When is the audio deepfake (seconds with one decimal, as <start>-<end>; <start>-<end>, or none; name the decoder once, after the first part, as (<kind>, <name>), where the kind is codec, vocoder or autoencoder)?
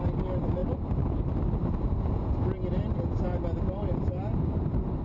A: none